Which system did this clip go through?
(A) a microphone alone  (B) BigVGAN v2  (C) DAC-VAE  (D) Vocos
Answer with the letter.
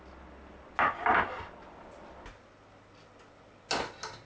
A